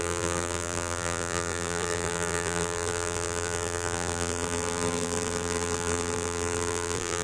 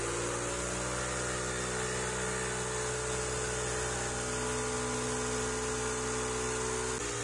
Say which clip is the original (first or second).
second